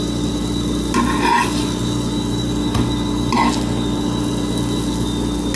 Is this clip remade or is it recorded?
recorded